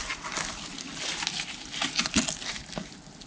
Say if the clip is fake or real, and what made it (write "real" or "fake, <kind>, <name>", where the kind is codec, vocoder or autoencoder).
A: real